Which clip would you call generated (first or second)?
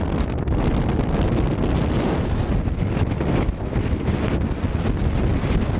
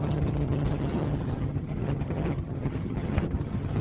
second